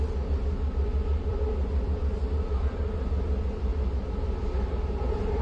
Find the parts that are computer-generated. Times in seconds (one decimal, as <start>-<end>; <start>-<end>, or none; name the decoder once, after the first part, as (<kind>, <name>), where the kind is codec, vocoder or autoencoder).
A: 0.9-2.0 (vocoder, BigVGAN v2)